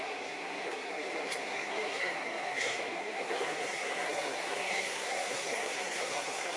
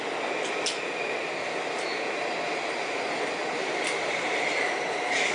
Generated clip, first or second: first